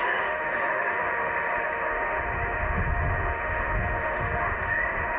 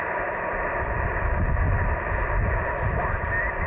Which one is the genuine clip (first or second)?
second